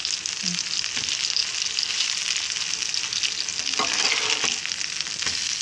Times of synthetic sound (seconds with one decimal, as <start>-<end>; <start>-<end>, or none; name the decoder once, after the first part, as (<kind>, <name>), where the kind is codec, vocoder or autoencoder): none